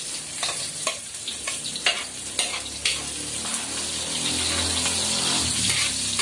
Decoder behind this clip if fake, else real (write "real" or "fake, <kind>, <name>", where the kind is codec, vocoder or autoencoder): real